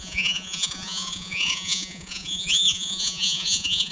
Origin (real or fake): fake